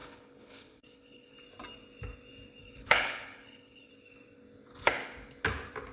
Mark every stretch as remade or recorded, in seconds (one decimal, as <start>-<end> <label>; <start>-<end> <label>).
0.0-1.3 remade; 1.3-2.6 recorded; 2.6-3.9 remade; 3.9-5.9 recorded